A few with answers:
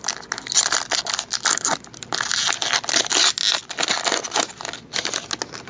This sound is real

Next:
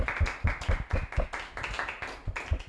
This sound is real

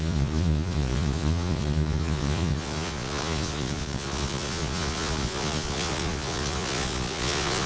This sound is fake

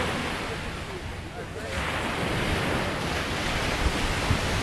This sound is real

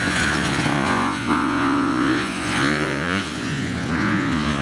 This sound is fake